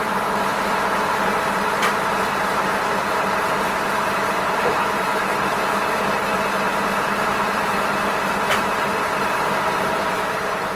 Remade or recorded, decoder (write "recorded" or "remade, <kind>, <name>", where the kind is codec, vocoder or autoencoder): remade, vocoder, BigVGAN v2